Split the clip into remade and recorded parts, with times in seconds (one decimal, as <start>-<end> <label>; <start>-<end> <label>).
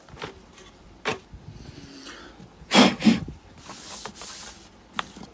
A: 0.0-5.3 recorded